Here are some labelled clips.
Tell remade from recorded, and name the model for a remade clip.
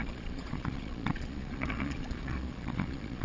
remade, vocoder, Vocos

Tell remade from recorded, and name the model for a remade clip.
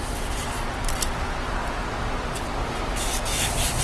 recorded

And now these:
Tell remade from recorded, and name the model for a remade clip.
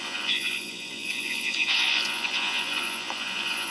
remade, vocoder, Vocos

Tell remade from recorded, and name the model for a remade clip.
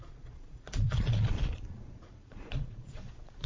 remade, vocoder, Vocos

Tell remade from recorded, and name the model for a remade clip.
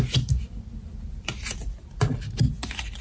recorded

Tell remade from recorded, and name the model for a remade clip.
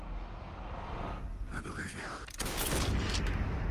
recorded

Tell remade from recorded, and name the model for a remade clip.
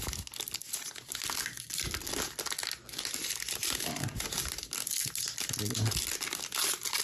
recorded